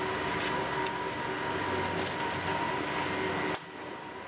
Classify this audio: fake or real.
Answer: real